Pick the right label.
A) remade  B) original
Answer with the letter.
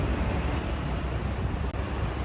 B